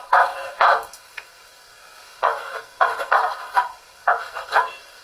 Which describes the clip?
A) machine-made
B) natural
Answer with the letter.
A